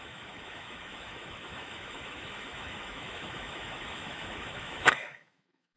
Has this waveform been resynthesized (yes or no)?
yes